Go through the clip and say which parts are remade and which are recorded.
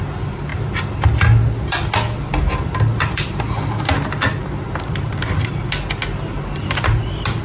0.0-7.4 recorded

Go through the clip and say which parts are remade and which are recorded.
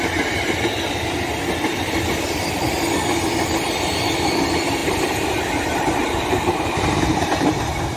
0.0-4.8 recorded; 4.8-8.0 remade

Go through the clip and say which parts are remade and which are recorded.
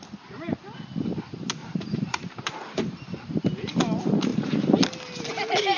0.0-1.6 recorded; 1.6-3.8 remade; 3.8-5.8 recorded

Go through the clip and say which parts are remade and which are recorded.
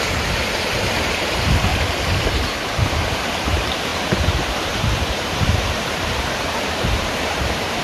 0.0-1.7 remade; 1.7-2.7 recorded; 2.7-7.8 remade